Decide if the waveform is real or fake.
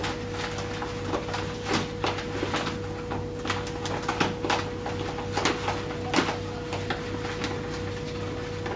real